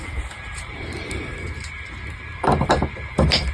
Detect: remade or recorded remade